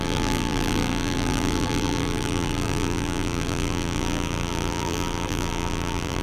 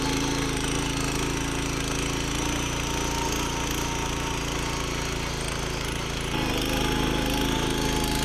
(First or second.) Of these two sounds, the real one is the second